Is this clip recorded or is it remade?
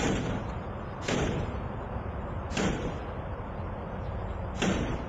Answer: recorded